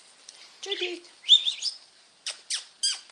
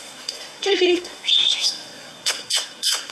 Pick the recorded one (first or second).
first